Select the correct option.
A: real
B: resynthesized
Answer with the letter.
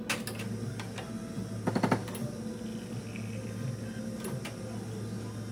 A